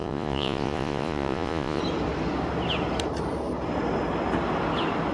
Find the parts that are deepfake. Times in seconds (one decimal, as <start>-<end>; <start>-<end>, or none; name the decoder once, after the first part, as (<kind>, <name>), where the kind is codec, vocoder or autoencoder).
0.0-1.8 (vocoder, Vocos)